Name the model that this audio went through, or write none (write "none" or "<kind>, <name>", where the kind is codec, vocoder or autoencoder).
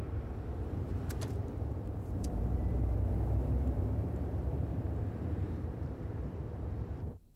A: vocoder, BigVGAN v2